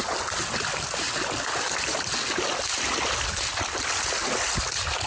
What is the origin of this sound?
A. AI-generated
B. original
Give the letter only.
B